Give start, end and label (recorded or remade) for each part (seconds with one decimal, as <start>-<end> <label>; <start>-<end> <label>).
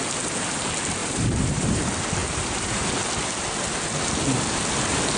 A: 0.0-1.0 recorded; 1.0-1.8 remade; 1.8-2.2 recorded; 2.2-2.8 remade; 2.8-5.2 recorded